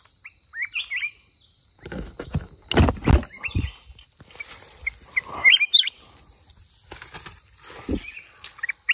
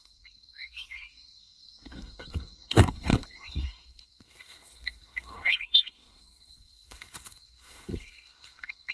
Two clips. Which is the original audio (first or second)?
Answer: first